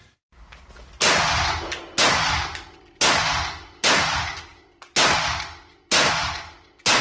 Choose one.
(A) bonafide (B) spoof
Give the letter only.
A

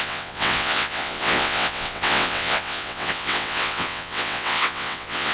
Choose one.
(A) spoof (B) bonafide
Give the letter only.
A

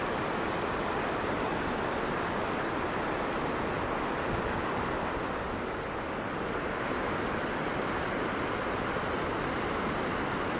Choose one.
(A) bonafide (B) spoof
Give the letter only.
A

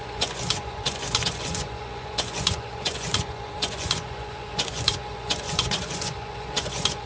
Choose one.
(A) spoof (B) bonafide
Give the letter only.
A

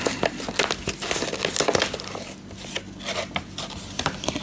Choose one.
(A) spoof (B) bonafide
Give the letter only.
B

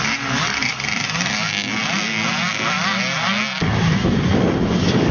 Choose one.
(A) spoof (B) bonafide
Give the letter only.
B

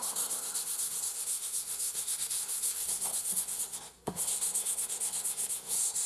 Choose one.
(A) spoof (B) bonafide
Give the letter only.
A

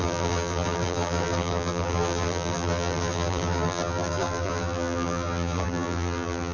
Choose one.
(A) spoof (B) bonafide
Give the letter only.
A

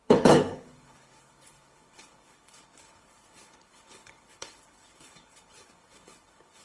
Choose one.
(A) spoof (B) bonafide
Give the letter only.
A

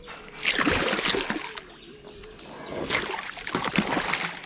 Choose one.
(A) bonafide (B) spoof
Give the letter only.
A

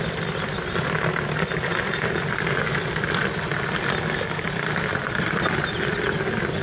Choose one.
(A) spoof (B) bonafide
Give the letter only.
B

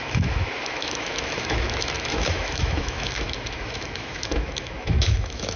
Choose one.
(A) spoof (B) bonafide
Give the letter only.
A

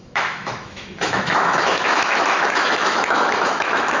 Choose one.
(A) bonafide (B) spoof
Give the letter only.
B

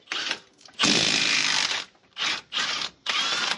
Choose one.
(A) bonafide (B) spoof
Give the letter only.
B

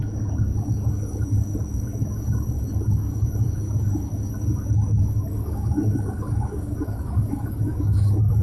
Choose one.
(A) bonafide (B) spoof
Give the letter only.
B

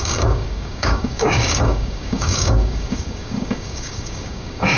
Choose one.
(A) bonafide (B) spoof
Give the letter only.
B